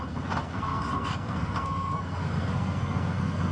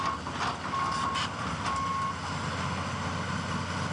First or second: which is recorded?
second